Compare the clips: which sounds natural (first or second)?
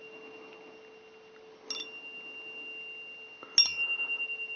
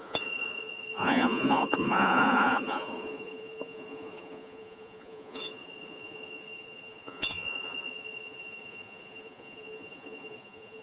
first